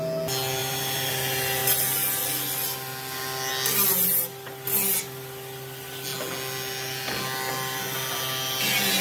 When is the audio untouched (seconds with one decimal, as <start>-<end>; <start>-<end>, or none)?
0.0-0.6; 1.1-9.0